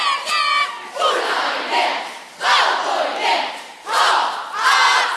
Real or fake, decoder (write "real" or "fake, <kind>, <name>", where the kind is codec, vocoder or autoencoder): fake, vocoder, BigVGAN v2